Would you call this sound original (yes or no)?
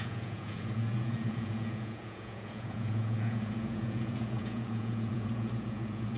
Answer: no